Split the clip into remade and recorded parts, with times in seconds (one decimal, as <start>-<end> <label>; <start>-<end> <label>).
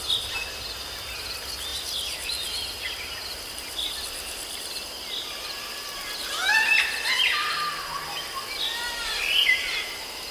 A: 0.0-10.3 recorded